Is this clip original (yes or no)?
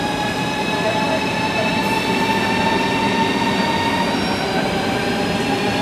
yes